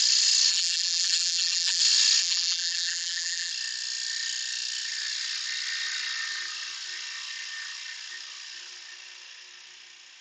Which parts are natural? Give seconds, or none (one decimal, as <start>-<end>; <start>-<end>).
0.0-0.5; 1.8-2.2; 3.5-10.2